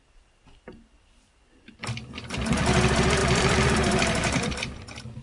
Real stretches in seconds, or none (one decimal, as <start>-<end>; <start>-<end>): 0.0-3.2